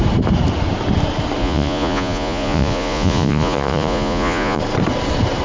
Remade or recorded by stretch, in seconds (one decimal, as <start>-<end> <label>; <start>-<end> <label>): 0.0-1.4 recorded; 1.4-4.6 remade; 4.6-5.4 recorded